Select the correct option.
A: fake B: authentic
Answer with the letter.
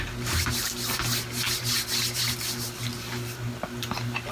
B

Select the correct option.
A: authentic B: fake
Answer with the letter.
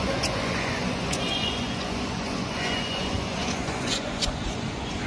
B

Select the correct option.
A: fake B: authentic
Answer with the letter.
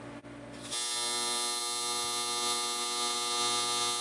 B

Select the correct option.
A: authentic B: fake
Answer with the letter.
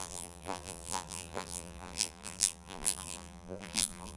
B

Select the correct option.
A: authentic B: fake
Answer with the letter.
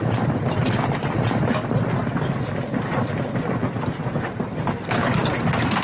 A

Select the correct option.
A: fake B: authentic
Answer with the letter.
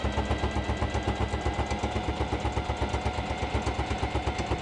B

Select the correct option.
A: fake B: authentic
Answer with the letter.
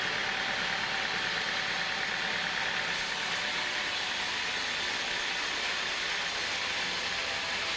B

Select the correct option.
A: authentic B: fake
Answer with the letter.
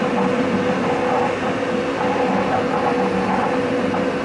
A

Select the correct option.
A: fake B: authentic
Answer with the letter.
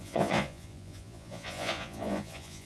A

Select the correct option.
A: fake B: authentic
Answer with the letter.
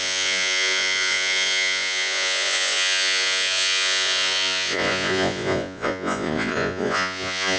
A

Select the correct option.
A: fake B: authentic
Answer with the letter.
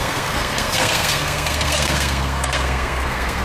A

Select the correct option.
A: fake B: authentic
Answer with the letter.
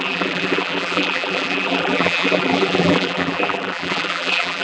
A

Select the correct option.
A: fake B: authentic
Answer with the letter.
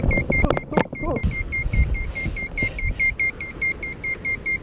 B